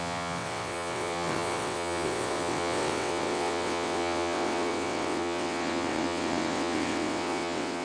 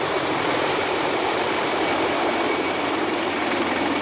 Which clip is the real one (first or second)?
second